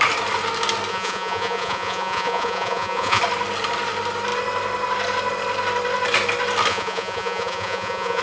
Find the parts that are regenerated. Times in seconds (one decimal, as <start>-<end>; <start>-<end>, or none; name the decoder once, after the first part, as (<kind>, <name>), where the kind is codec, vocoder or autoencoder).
0.9-3.2 (vocoder, Vocos); 6.7-8.2